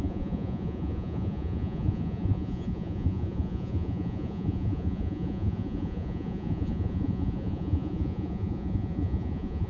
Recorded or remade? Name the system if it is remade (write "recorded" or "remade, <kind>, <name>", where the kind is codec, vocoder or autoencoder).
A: remade, vocoder, Vocos